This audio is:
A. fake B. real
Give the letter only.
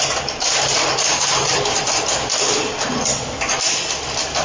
B